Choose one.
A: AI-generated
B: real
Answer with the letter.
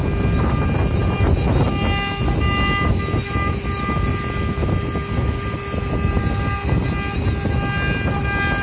B